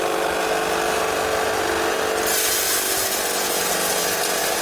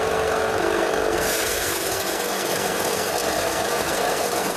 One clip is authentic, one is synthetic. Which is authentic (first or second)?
first